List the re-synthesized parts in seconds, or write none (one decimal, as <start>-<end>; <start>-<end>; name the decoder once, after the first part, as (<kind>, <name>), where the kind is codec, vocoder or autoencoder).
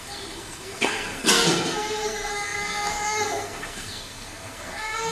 0.0-5.1 (codec, SNAC)